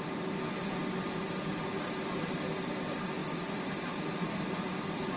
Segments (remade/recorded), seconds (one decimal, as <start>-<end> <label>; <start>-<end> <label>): 0.0-3.2 recorded; 3.2-3.9 remade; 3.9-5.2 recorded